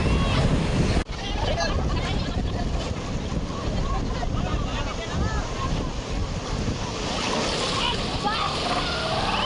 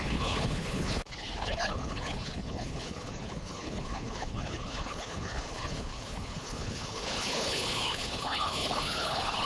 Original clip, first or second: first